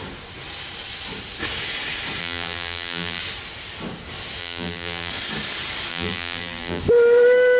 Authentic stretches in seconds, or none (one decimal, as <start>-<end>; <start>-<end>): 0.0-2.2; 3.2-4.4; 5.1-5.9; 6.8-7.6